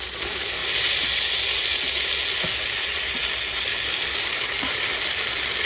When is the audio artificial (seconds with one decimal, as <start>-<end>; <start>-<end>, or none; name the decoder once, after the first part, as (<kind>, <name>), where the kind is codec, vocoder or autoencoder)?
3.7-5.2 (codec, DAC)